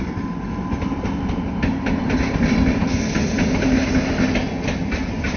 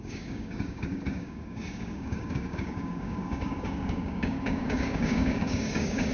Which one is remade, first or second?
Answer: second